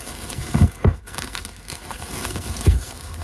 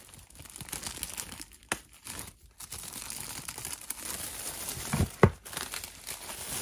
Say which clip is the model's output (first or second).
first